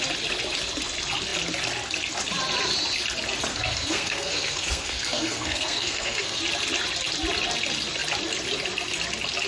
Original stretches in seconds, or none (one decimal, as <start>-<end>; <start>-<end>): 0.0-3.5; 6.4-9.5